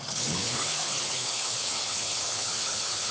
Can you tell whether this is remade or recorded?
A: remade